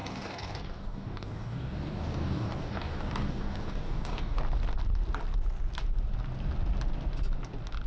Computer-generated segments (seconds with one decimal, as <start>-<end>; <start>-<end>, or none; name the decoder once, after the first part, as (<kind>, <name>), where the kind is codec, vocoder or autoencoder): 0.0-4.4 (codec, DAC)